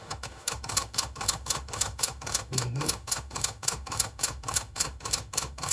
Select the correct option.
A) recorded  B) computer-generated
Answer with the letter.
B